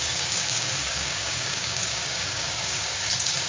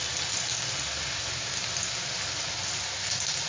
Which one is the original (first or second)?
second